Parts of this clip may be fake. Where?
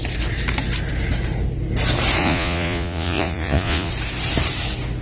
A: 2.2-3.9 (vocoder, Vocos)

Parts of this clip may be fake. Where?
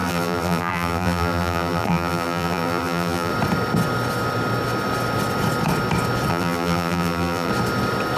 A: 0.0-3.3 (vocoder, BigVGAN v2); 6.3-7.5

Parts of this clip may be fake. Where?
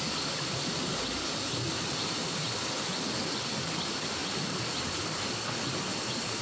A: none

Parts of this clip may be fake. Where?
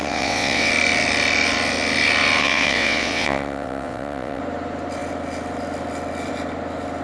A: 0.0-0.7 (vocoder, WaveNeXt); 2.4-4.4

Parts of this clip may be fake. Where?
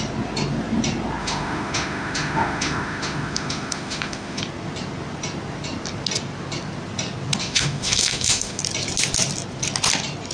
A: 1.2-4.4 (autoencoder, DAC-VAE); 7.4-8.6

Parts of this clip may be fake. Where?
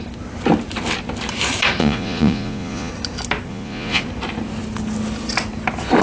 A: 1.8-2.9 (vocoder, Vocos); 3.5-4.0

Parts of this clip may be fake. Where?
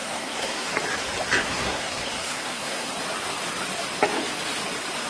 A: 0.0-0.7 (codec, SNAC); 1.4-2.9